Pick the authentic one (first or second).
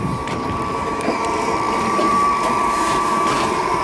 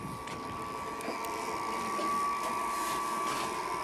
second